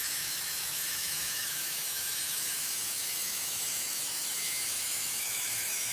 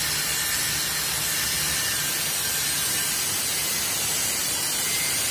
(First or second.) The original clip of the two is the second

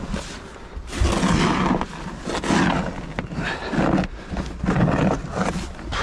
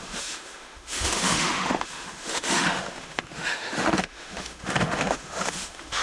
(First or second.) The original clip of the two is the first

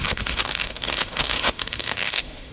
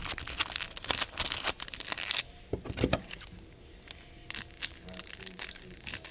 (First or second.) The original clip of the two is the second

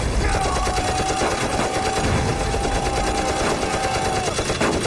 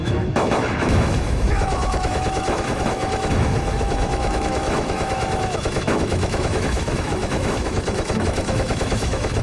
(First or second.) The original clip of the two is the first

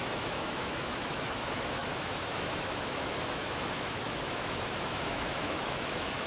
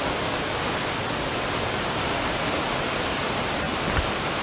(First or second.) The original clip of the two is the second